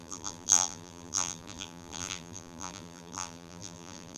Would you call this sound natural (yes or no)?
no